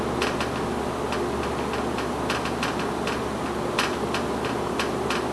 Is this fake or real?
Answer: real